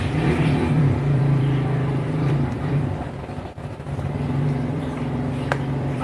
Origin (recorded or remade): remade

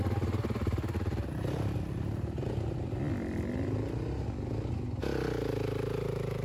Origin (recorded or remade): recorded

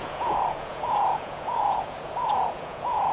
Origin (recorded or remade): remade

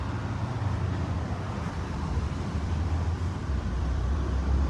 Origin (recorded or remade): remade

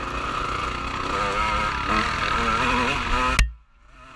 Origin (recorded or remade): recorded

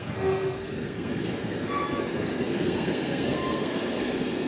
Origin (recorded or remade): remade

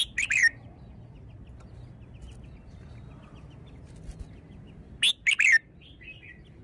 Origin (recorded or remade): recorded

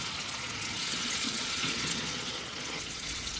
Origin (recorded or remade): remade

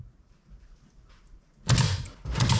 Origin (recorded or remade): recorded